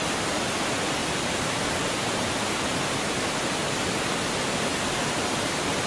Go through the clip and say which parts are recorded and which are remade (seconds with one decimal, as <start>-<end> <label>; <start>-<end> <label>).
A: 0.0-5.9 recorded